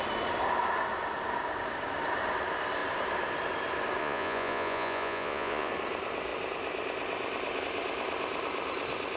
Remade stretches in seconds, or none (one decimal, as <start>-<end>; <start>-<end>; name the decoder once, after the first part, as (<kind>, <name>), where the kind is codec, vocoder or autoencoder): 4.0-5.7 (vocoder, Vocos)